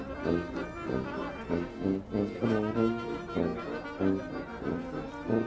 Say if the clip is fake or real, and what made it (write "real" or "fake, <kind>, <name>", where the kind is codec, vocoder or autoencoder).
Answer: real